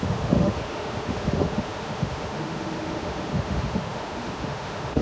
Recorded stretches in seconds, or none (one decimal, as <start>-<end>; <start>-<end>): none